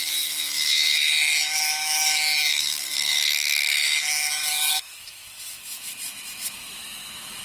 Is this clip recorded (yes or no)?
no